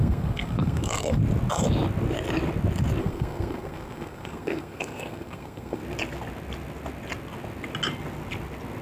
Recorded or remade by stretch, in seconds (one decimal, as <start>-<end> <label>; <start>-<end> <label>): 0.0-1.2 remade; 1.2-3.0 recorded; 3.0-5.8 remade; 5.8-8.8 recorded

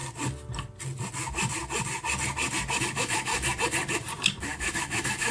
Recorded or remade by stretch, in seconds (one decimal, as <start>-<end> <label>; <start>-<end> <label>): 0.0-2.8 recorded; 2.8-3.3 remade; 3.3-4.4 recorded; 4.4-5.3 remade

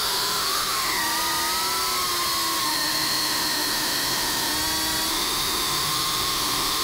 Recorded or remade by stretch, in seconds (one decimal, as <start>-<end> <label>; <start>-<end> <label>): 0.0-1.0 remade; 1.0-2.6 recorded; 2.6-4.5 remade; 4.5-5.1 recorded; 5.1-6.8 remade

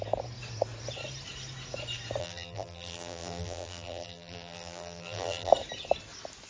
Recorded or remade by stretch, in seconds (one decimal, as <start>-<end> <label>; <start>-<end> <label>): 0.0-2.2 recorded; 2.2-5.5 remade; 5.5-6.5 recorded

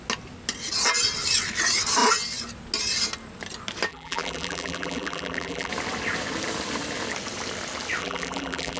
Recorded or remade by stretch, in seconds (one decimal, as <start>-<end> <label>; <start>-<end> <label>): 0.0-3.9 recorded; 3.9-5.7 remade; 5.7-8.0 recorded; 8.0-8.8 remade